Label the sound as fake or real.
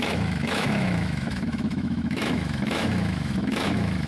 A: fake